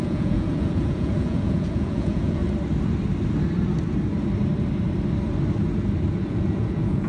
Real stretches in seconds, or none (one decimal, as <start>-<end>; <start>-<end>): 2.4-6.1